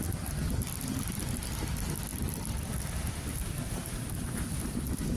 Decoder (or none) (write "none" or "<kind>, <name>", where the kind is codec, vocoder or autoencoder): none